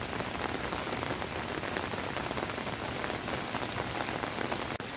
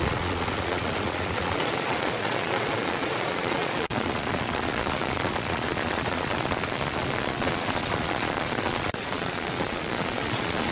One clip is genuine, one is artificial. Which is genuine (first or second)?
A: first